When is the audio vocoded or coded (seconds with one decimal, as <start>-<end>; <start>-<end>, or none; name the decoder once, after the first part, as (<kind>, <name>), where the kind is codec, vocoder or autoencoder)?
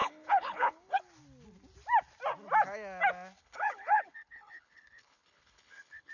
0.0-1.0 (codec, HILCodec); 3.4-6.1